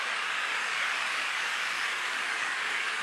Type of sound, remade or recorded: remade